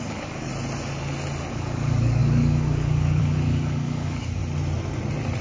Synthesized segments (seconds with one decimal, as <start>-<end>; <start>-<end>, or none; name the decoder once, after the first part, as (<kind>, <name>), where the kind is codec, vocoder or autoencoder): 0.0-0.5 (codec, DAC); 1.5-4.4